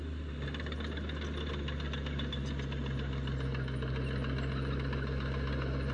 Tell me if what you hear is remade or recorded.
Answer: recorded